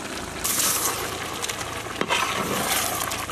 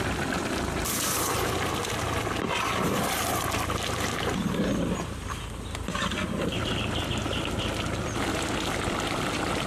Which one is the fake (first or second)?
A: second